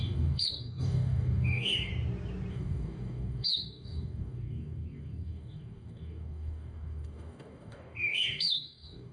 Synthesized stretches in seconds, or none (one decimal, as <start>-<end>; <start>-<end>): 0.0-1.9; 2.5-9.1

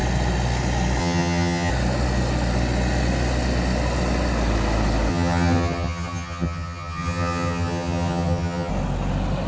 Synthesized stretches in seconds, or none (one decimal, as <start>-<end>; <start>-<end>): 1.0-1.7; 5.1-8.7

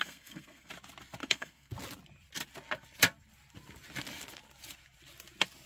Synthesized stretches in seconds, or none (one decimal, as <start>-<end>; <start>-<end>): 0.0-0.7; 1.2-1.7

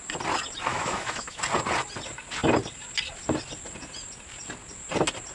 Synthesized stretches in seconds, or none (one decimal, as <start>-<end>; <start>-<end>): 0.7-1.4